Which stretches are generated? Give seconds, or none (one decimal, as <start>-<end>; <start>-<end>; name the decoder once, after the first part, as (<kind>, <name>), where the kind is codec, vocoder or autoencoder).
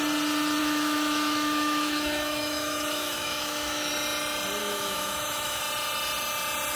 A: 0.6-3.9 (autoencoder, DAC-VAE); 4.6-5.6